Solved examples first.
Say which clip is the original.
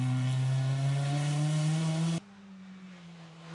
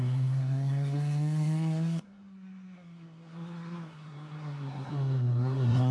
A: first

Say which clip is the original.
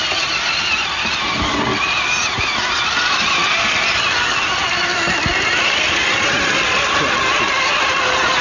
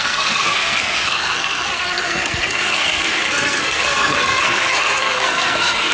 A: first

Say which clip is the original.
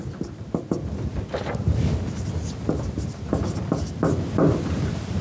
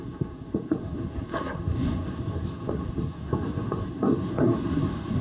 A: first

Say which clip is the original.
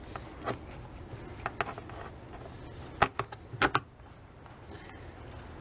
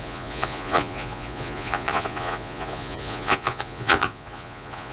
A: first